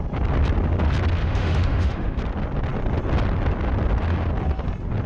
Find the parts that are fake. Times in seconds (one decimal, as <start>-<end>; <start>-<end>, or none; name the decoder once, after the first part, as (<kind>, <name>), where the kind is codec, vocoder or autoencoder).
1.2-2.2 (autoencoder, DAC-VAE)